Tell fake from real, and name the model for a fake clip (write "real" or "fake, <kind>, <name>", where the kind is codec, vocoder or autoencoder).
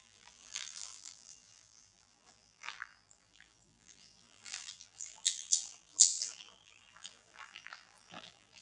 fake, vocoder, BigVGAN v2